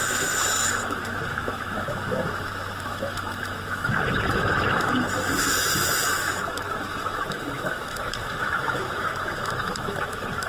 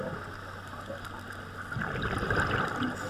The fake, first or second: first